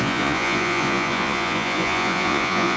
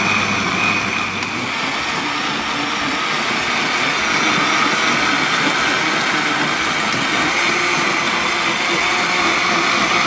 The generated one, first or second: first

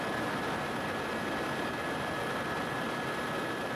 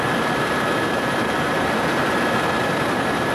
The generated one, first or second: second